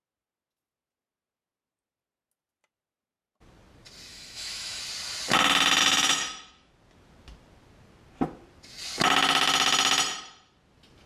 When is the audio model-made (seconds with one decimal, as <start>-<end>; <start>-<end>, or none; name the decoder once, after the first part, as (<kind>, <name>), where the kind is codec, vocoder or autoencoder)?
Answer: 4.1-4.8 (autoencoder, DAC-VAE); 5.8-6.7